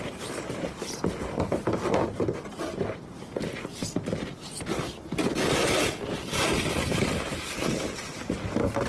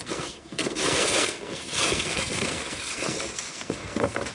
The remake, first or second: second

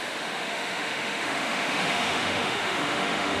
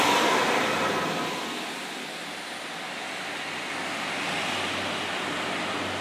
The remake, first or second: first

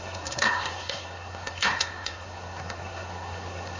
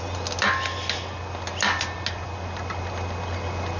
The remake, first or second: first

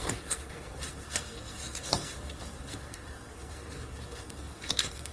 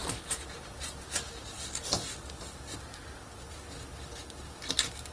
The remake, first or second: first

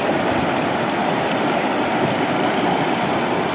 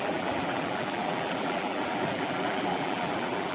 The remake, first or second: second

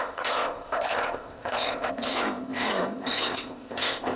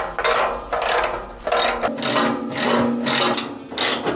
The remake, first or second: first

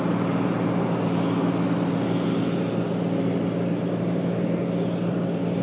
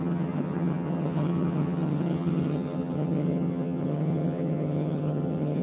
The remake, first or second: second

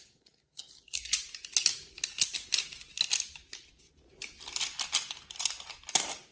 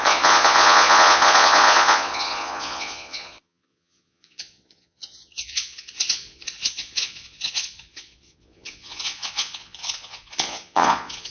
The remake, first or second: second